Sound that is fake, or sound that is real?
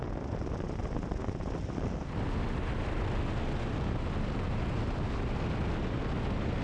real